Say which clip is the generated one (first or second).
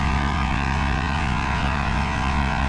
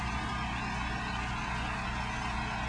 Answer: first